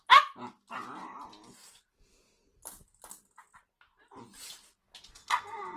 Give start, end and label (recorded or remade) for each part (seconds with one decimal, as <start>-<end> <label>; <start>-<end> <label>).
0.0-5.2 recorded; 5.2-5.8 remade